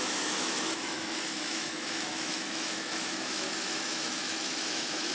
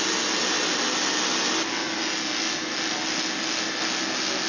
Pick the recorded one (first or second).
second